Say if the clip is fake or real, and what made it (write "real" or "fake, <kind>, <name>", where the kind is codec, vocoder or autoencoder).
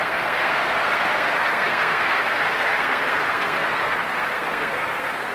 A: fake, codec, SNAC